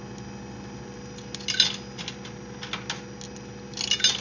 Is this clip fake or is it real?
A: real